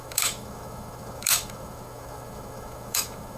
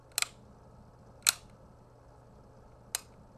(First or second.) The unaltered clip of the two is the second